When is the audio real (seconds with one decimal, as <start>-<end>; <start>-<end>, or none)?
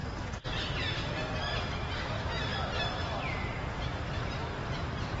0.0-2.5; 4.4-5.2